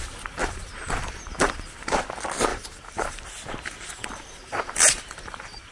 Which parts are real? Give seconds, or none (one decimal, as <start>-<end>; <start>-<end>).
0.0-0.4; 2.0-2.5; 3.3-4.0